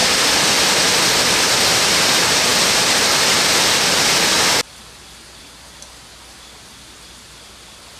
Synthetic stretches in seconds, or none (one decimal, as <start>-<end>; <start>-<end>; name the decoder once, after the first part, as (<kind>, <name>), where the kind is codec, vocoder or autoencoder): none